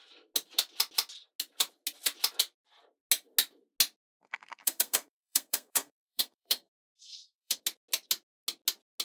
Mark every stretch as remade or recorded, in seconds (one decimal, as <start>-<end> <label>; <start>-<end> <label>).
0.0-4.2 recorded; 4.2-7.6 remade; 7.6-9.0 recorded